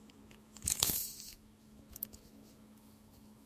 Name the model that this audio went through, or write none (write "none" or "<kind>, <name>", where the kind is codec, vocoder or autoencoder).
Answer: autoencoder, DAC-VAE